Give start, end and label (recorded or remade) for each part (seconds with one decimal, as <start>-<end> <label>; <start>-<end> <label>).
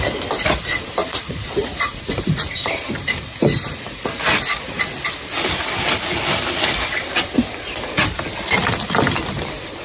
0.0-1.0 recorded; 1.0-2.5 remade; 2.5-9.8 recorded